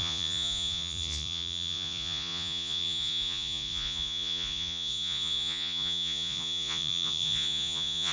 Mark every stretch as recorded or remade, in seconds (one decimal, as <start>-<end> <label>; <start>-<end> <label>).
0.0-8.1 remade